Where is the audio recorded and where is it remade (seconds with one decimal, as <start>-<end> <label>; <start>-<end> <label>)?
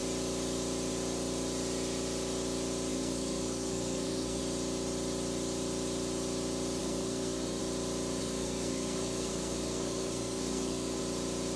0.0-2.9 recorded; 2.9-4.4 remade; 4.4-6.8 recorded; 6.8-7.6 remade; 7.6-8.2 recorded; 8.2-11.0 remade; 11.0-11.6 recorded